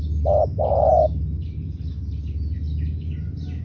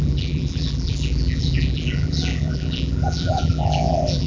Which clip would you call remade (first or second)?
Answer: second